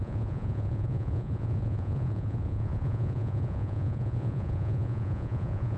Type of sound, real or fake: fake